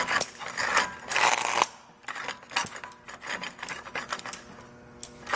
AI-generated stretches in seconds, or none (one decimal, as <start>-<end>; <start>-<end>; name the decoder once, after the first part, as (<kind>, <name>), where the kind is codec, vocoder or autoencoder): none